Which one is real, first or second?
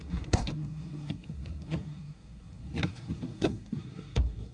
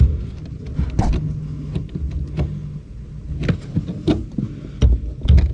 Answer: second